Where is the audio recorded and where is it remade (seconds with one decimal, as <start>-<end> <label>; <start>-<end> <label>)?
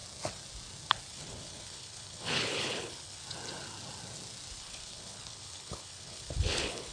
0.0-1.1 recorded; 1.1-3.2 remade; 3.2-4.6 recorded; 4.6-6.9 remade